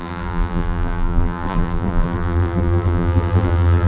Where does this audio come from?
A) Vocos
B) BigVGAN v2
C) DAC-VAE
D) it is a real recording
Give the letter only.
B